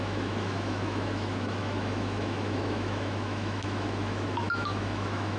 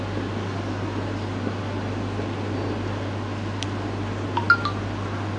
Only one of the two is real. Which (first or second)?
second